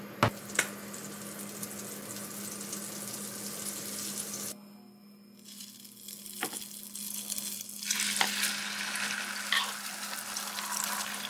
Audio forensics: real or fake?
real